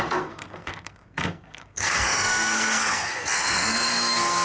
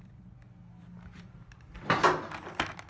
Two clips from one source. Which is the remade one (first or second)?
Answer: first